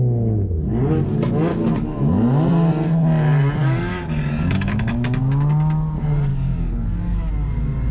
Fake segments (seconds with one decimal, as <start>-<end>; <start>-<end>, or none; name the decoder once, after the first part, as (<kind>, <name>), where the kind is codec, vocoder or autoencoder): 1.5-2.1 (codec, DAC); 3.6-5.2; 6.3-7.3